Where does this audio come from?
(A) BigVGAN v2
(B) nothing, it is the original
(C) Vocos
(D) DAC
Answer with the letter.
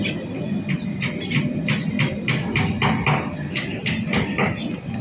B